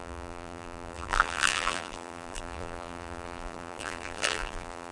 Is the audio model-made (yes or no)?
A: yes